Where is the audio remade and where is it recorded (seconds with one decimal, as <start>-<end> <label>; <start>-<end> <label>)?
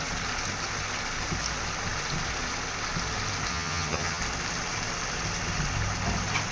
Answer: 0.0-3.5 recorded; 3.5-4.2 remade; 4.2-6.5 recorded